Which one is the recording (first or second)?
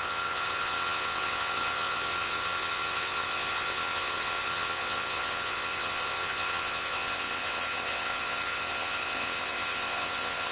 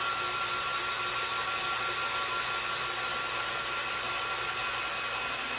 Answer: second